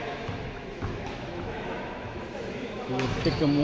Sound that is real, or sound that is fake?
fake